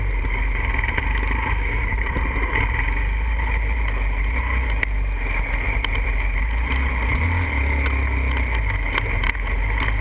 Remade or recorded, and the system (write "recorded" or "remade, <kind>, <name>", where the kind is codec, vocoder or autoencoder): recorded